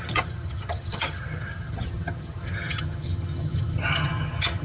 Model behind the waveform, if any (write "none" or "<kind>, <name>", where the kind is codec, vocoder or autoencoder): vocoder, HiFi-GAN